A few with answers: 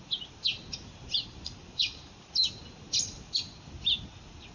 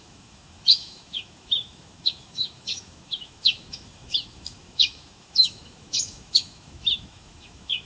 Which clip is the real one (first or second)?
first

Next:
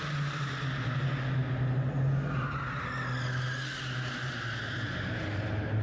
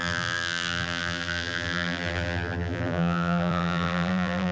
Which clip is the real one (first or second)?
first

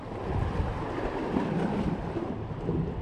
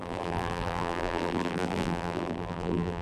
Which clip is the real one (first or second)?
first